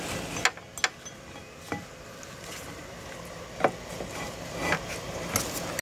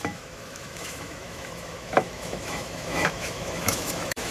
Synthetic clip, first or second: second